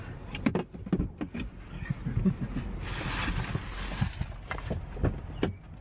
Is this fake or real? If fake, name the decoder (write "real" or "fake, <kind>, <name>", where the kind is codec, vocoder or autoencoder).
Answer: real